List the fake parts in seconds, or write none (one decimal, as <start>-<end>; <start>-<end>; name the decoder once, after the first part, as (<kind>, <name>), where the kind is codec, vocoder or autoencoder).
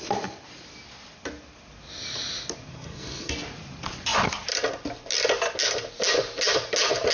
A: 2.7-3.3 (codec, SNAC)